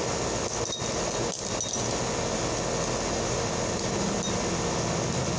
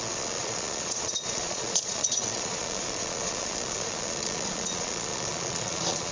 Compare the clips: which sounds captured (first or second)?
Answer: first